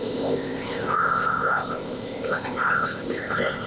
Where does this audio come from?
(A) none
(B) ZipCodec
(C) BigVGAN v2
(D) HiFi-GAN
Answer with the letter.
B